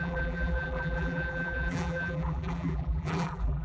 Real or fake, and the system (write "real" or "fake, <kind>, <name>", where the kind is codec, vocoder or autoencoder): fake, vocoder, BigVGAN v2